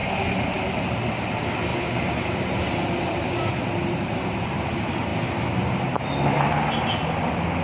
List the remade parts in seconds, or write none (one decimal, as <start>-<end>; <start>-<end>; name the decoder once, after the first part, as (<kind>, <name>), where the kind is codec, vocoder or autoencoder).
none